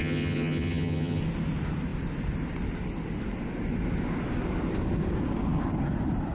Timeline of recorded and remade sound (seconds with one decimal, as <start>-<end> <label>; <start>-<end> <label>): 0.0-1.2 remade; 1.2-6.3 recorded